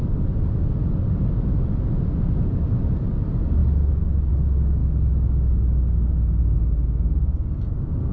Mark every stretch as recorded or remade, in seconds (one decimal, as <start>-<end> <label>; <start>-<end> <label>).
0.0-8.1 recorded